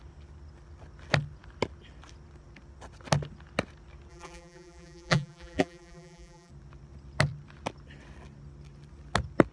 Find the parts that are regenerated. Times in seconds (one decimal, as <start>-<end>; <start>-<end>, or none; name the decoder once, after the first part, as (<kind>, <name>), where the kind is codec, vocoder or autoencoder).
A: 4.1-6.5 (vocoder, BigVGAN v2)